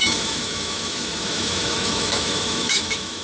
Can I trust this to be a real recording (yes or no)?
no